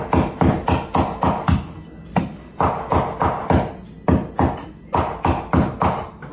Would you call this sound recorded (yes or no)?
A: yes